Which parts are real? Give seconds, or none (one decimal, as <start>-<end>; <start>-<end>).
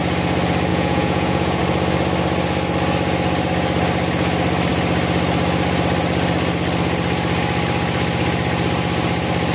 0.0-0.7; 1.6-9.5